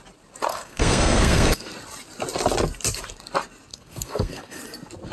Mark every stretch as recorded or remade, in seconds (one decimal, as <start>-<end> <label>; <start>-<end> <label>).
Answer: 0.0-0.5 recorded; 0.5-1.7 remade; 1.7-3.7 recorded; 3.7-4.6 remade; 4.6-5.1 recorded